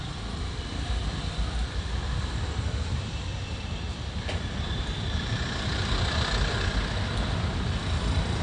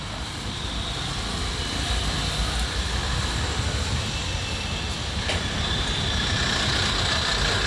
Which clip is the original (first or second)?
second